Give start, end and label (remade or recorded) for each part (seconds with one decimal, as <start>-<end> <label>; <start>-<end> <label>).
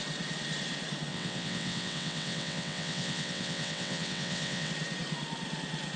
0.0-1.1 recorded; 1.1-4.7 remade; 4.7-6.0 recorded